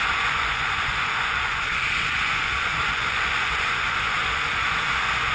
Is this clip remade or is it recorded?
remade